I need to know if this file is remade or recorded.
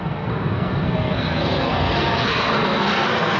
remade